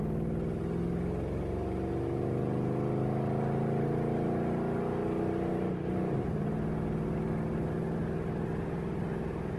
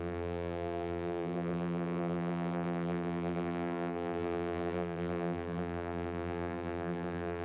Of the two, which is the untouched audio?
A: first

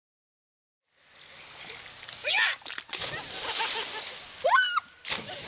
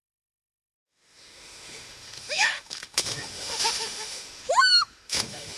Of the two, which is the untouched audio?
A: first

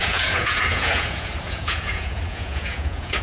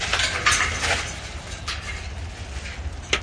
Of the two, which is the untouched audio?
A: second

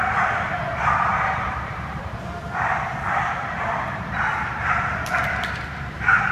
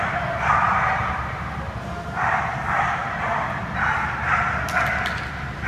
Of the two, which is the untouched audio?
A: second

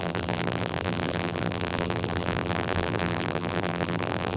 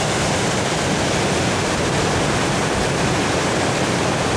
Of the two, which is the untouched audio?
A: second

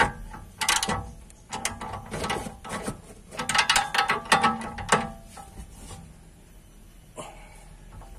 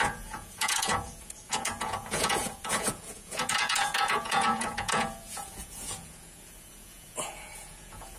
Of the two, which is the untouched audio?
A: first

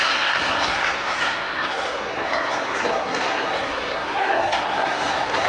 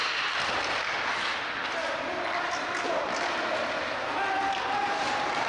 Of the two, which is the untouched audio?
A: second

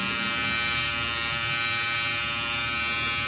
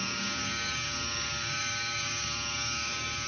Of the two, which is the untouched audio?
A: first